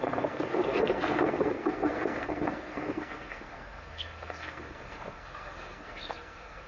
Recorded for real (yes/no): no